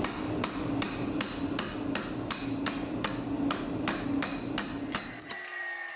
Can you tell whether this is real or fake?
real